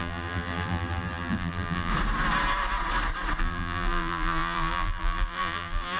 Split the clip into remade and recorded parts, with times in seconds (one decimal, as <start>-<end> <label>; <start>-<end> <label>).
0.0-1.9 remade; 1.9-3.4 recorded; 3.4-6.0 remade